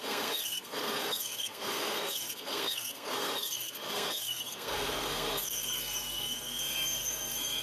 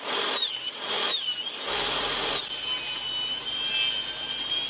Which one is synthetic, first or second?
first